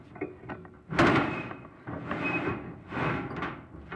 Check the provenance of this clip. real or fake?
real